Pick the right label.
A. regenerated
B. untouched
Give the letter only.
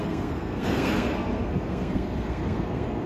A